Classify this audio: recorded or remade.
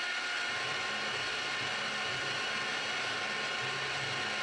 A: recorded